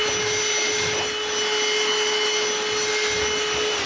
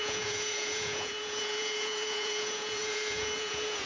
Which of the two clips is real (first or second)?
first